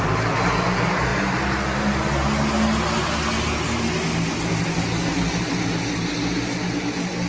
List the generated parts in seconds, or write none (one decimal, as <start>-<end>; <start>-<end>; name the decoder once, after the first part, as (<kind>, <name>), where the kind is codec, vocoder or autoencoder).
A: none